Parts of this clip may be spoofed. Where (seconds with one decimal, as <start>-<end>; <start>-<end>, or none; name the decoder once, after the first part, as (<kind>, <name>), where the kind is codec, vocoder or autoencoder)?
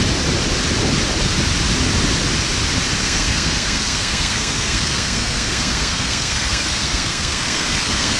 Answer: 3.0-8.2 (codec, SNAC)